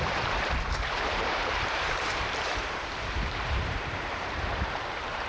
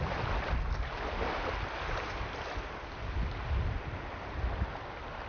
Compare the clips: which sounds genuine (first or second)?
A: second